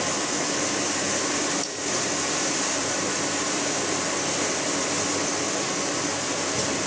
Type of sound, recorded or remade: recorded